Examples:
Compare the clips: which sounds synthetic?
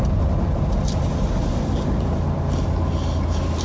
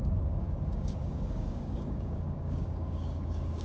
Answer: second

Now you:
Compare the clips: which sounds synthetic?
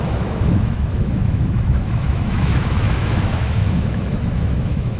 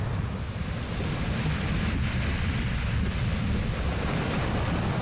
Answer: first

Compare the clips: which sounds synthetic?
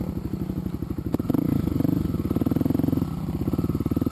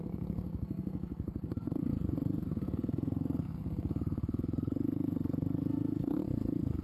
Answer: second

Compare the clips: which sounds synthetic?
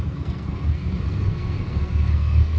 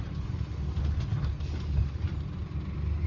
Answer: first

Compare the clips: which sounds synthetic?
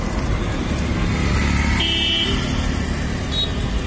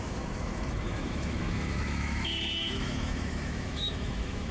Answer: second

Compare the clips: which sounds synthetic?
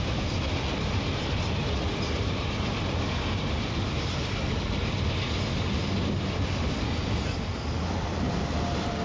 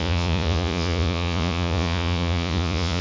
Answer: second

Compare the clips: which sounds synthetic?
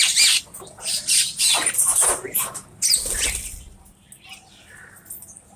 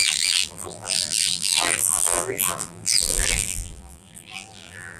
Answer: second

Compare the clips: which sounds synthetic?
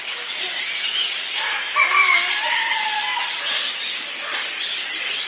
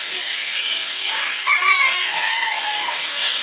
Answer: second